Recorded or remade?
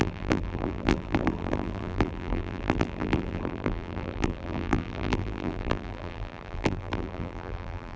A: remade